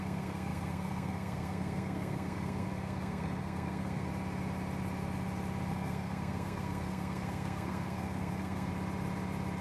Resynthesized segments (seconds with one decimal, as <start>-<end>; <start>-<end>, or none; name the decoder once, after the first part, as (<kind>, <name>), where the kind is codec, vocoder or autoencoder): 0.0-4.1 (codec, SNAC); 5.7-8.7